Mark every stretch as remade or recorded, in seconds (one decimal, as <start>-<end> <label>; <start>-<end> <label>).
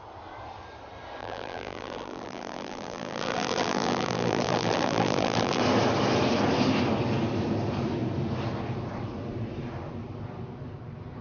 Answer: 0.0-1.2 recorded; 1.2-5.6 remade; 5.6-11.2 recorded